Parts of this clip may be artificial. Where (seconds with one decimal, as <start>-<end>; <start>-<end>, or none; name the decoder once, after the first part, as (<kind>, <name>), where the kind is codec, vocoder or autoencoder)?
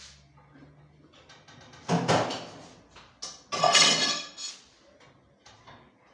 3.6-4.5 (codec, SNAC)